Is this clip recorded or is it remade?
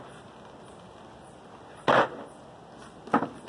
recorded